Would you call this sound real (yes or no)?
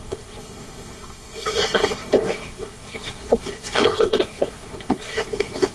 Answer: no